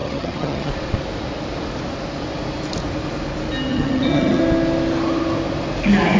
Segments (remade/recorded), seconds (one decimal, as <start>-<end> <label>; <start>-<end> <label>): 0.0-0.7 remade; 0.7-3.7 recorded; 3.7-4.4 remade; 4.4-6.2 recorded